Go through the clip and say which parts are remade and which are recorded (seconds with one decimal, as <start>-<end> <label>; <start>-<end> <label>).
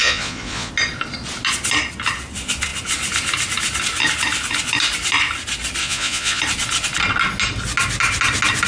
0.0-0.7 remade; 0.7-5.8 recorded; 5.8-6.4 remade; 6.4-8.7 recorded